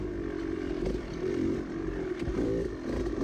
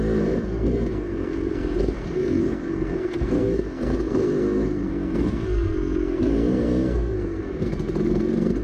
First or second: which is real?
first